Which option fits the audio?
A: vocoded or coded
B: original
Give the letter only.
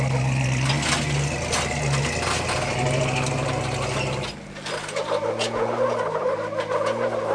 B